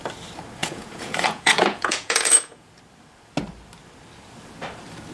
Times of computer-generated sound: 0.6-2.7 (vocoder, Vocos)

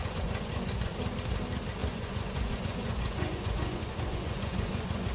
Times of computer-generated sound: 0.0-0.9 (vocoder, Vocos); 1.8-5.1

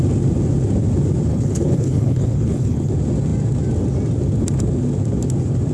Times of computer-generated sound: 1.3-2.9 (codec, HILCodec)

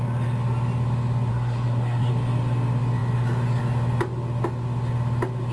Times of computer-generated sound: 1.3-2.1 (codec, SNAC)

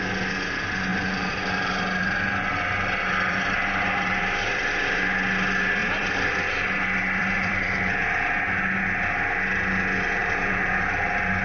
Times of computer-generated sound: 0.9-5.0 (vocoder, BigVGAN v2); 5.8-6.8; 7.2-8.8; 10.2-10.7